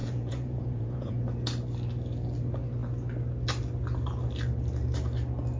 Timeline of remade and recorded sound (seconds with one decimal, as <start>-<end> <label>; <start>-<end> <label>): 0.0-1.1 remade; 1.1-5.6 recorded